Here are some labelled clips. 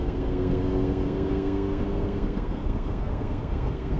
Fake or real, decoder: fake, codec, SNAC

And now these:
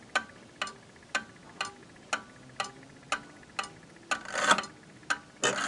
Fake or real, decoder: real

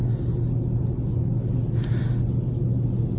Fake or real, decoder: real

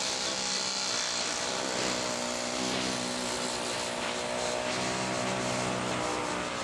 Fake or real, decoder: real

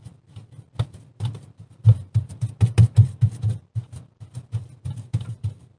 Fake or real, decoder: real